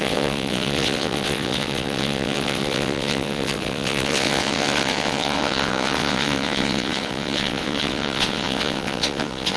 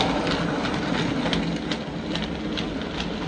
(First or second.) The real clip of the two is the second